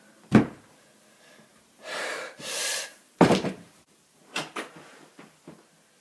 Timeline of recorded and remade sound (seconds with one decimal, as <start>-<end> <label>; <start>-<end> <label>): 0.0-1.5 recorded; 1.5-5.1 remade; 5.1-6.0 recorded